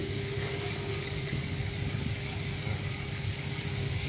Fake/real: fake